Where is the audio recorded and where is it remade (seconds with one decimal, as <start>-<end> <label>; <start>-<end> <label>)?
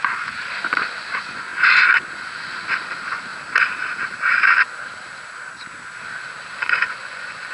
0.0-1.5 remade; 1.5-2.1 recorded; 2.1-3.3 remade; 3.3-6.6 recorded; 6.6-7.5 remade